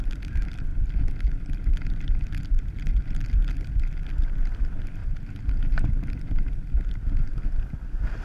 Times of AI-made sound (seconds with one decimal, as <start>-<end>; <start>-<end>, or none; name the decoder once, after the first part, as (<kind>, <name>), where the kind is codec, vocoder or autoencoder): none